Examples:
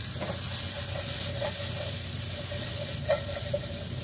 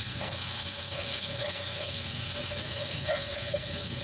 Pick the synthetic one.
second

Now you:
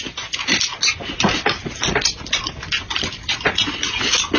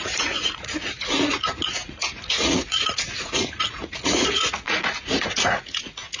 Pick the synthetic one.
second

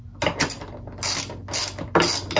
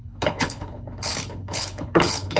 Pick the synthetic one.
second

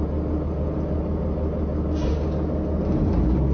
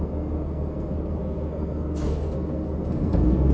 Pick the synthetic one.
second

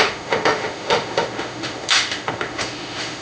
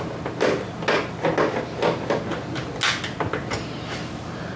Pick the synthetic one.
first